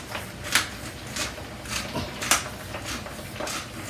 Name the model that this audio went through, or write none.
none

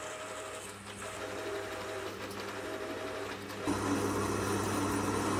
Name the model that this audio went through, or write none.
none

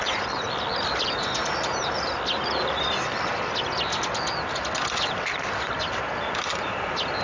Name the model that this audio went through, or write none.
none